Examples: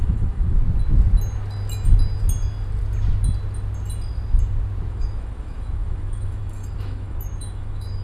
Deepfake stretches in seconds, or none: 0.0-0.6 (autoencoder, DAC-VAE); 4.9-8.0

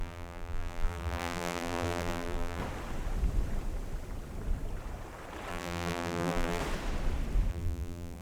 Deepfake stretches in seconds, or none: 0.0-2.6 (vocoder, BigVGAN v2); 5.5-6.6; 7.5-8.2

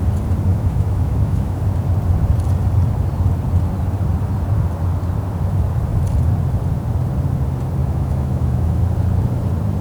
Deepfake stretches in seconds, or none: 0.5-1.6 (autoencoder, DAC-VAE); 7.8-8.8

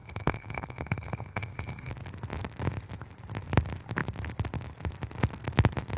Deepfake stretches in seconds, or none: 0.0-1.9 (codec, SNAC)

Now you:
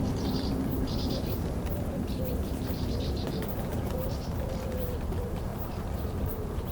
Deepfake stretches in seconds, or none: 0.0-6.7 (vocoder, BigVGAN v2)

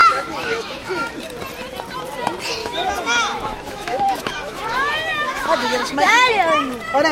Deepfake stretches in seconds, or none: 0.0-1.1 (autoencoder, DAC-VAE); 2.6-6.3